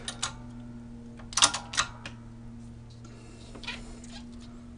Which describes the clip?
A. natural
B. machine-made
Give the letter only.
A